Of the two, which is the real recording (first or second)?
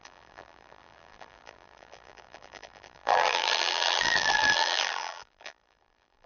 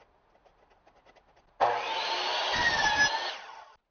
second